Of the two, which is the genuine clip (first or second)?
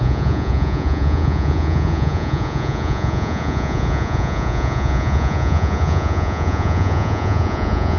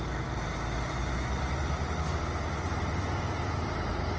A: second